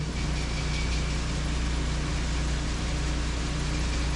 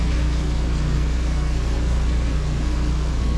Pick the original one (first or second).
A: first